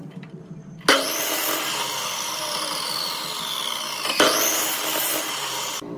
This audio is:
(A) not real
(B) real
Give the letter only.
B